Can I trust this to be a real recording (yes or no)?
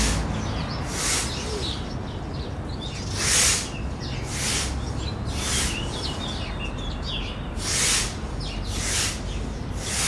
yes